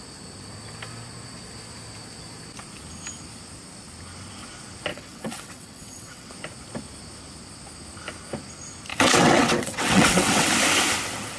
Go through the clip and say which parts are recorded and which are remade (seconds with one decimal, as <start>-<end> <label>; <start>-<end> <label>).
0.0-4.9 recorded; 4.9-6.3 remade; 6.3-8.9 recorded; 8.9-10.5 remade; 10.5-11.4 recorded